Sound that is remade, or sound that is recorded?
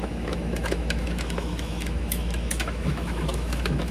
remade